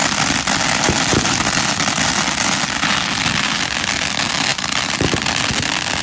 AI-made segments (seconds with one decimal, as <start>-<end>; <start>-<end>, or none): 0.0-3.6; 4.5-5.4